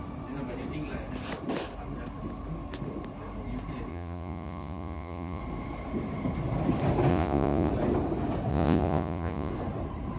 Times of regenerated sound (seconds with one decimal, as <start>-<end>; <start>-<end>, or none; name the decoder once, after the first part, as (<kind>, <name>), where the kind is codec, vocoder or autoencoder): 3.9-5.4 (vocoder, Vocos); 7.1-7.7; 8.5-9.5